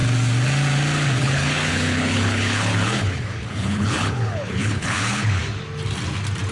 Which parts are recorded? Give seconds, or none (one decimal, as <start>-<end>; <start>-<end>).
0.0-1.2; 5.4-6.5